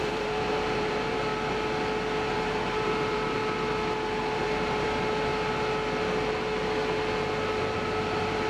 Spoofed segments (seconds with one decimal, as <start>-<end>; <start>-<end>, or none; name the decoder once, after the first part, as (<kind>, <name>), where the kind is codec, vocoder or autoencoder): 0.0-1.3 (vocoder, BigVGAN v2); 2.3-3.4; 4.4-5.3; 7.6-8.5